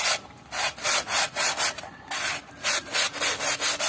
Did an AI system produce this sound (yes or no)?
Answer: no